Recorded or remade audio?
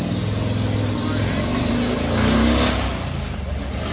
recorded